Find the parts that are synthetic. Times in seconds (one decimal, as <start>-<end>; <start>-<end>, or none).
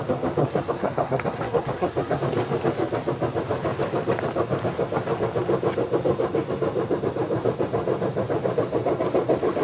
0.4-2.2